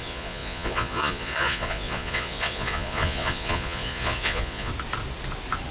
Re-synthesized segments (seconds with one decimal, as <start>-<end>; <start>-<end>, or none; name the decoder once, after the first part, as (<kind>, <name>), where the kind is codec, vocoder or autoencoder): 0.0-4.7 (vocoder, Vocos)